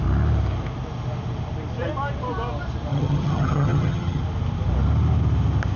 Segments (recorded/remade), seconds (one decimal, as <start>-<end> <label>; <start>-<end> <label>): 0.0-2.9 recorded; 2.9-4.2 remade; 4.2-5.8 recorded